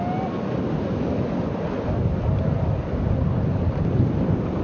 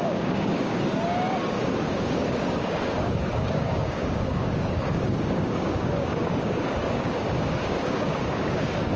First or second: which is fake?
second